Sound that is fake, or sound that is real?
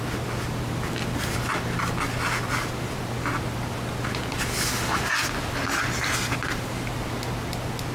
real